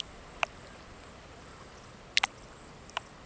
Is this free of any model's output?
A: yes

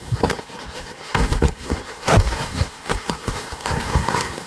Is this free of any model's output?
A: no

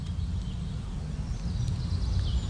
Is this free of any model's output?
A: yes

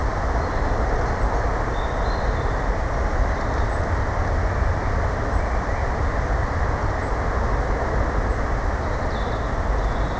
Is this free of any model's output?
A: yes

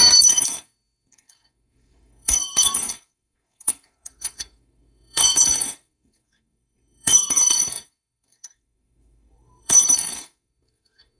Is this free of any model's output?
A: no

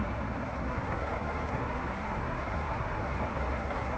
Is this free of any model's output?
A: no